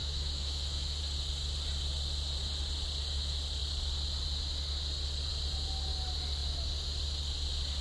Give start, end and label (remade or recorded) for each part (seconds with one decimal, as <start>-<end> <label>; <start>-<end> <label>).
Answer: 0.0-1.0 remade; 1.0-7.8 recorded